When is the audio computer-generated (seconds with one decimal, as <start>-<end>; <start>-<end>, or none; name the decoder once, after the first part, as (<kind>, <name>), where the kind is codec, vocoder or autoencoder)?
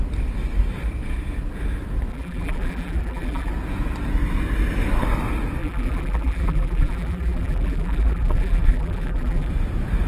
2.1-3.5 (vocoder, BigVGAN v2); 5.6-9.5